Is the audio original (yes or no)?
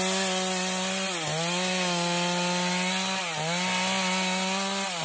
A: yes